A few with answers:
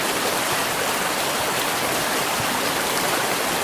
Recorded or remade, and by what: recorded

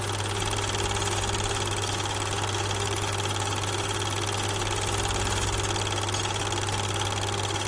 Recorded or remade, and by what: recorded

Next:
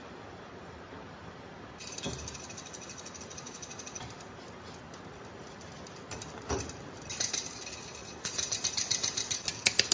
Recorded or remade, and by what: recorded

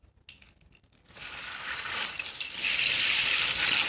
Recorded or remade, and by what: recorded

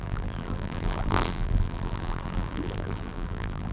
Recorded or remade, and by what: remade, vocoder, BigVGAN v2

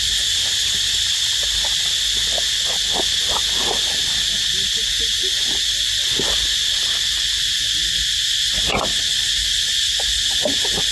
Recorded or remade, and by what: recorded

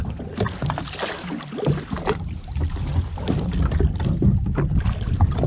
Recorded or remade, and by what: recorded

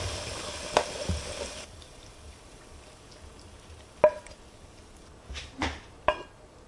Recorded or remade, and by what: recorded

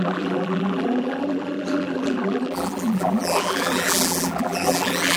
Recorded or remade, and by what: remade, vocoder, BigVGAN v2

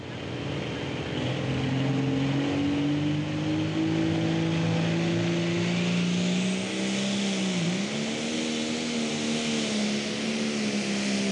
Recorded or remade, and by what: recorded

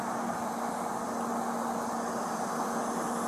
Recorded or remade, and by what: recorded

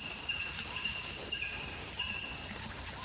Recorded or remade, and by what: remade, vocoder, BigVGAN v2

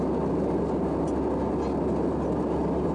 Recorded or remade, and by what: recorded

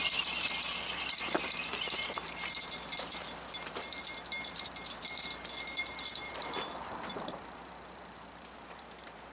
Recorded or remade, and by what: remade, vocoder, BigVGAN v2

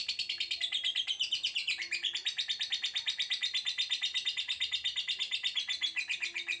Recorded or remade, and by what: recorded